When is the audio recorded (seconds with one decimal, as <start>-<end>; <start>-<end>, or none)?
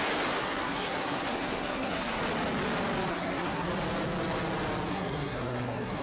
0.0-0.4; 2.2-3.1; 3.7-4.9